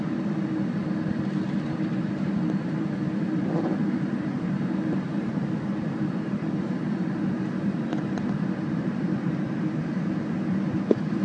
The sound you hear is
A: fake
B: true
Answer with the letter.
A